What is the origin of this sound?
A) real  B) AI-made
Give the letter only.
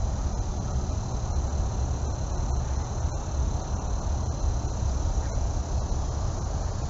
A